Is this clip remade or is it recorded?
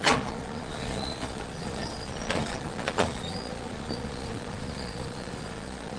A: remade